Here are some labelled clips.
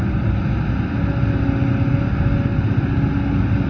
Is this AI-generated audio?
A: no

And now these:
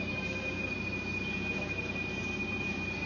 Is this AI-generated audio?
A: no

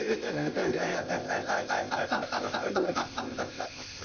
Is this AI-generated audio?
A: yes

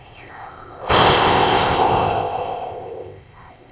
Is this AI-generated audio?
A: yes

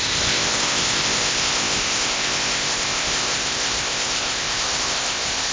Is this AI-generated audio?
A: yes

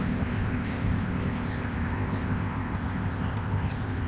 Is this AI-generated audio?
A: yes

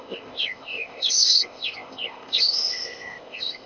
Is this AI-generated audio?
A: yes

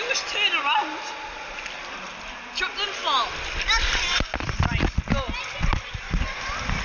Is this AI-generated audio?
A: no